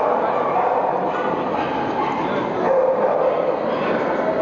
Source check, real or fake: real